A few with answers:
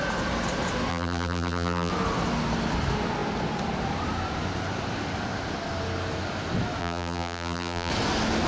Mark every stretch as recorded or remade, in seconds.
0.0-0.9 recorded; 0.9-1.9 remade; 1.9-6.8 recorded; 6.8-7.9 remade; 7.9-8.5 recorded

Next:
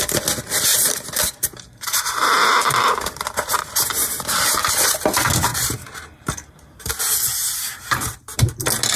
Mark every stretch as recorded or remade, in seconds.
0.0-0.7 recorded; 0.7-3.6 remade; 3.6-4.0 recorded; 4.0-4.7 remade; 4.7-5.5 recorded; 5.5-7.0 remade; 7.0-7.4 recorded; 7.4-8.5 remade; 8.5-9.0 recorded

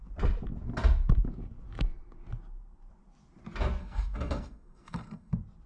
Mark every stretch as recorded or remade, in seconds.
0.0-3.8 recorded; 3.8-5.3 remade; 5.3-5.7 recorded